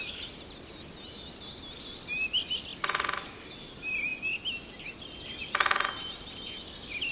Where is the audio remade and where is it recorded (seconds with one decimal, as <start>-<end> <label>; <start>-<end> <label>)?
0.0-7.1 recorded